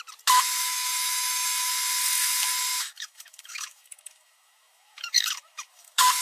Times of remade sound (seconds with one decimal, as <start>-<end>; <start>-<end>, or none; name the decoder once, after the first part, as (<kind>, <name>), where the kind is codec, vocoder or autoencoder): 0.6-1.7 (autoencoder, DAC-VAE); 2.7-6.2